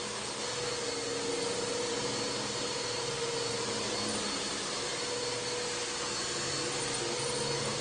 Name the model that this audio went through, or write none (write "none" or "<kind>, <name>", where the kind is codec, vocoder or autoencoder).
none